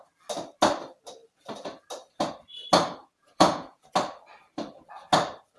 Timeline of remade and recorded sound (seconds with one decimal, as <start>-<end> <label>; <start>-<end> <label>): 0.0-3.0 recorded; 3.0-3.8 remade; 3.8-5.6 recorded